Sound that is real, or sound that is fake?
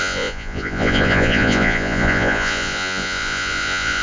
fake